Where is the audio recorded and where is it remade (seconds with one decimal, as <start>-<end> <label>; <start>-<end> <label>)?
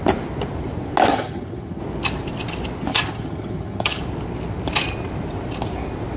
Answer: 0.0-1.1 recorded; 1.1-1.8 remade; 1.8-2.9 recorded; 2.9-4.0 remade; 4.0-6.2 recorded